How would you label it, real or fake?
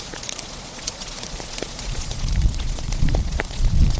fake